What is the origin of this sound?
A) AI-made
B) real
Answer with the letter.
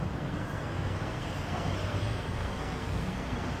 A